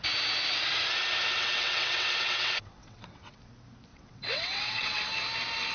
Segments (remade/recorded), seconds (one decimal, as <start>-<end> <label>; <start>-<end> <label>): 0.0-1.3 recorded; 1.3-3.4 remade; 3.4-3.9 recorded; 3.9-5.0 remade; 5.0-5.7 recorded